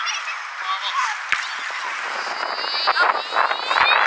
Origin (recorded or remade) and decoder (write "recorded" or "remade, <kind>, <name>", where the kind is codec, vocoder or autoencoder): recorded